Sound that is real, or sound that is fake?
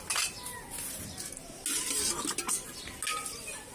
real